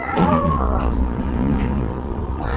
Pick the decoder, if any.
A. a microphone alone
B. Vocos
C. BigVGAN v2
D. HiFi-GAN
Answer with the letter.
B